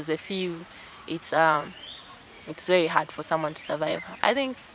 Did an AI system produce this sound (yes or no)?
yes